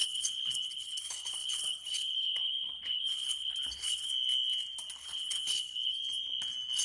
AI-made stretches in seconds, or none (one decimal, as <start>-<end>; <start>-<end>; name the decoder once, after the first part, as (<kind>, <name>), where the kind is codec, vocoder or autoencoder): 0.0-4.1 (codec, HILCodec); 5.0-6.0